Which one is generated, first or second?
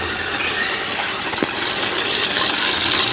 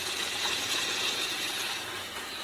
second